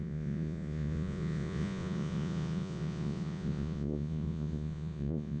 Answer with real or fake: fake